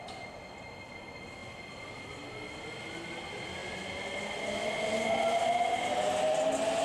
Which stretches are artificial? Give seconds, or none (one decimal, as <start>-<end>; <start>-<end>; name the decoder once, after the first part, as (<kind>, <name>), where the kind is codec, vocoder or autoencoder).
none